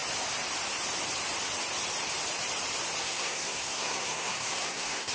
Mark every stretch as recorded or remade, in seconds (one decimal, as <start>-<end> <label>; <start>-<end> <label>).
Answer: 0.0-3.0 recorded; 3.0-5.1 remade